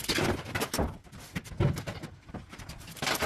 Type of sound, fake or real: real